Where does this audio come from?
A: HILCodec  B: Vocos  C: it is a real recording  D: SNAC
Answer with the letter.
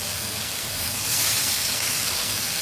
D